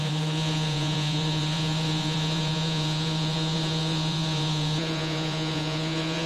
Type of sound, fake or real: fake